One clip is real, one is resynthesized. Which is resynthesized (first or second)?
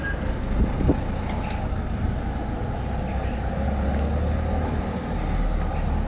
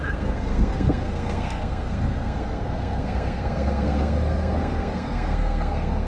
second